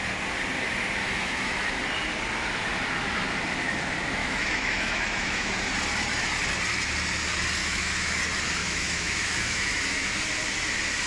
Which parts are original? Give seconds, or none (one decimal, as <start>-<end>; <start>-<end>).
0.0-1.0; 1.8-4.2; 5.5-7.6; 8.2-8.6; 10.2-11.1